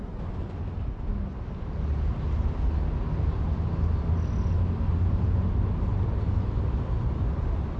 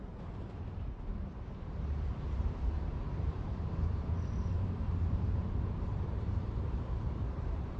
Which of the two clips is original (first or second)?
first